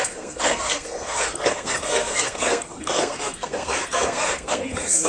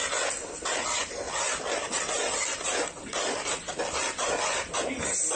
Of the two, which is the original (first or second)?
second